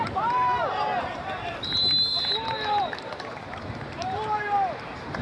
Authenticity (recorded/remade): remade